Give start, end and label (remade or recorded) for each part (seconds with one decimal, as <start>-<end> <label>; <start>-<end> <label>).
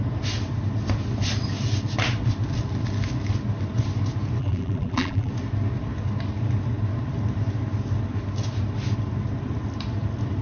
0.0-4.4 recorded; 4.4-5.3 remade; 5.3-10.4 recorded